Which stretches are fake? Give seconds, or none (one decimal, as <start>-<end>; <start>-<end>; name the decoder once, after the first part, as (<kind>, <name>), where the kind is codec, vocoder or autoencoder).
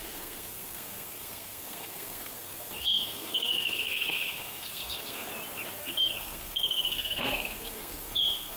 0.0-5.3 (codec, SNAC); 5.8-8.6